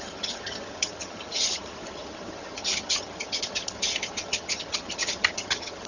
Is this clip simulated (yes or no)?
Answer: yes